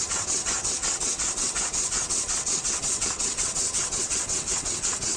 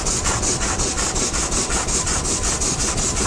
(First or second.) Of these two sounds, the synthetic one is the first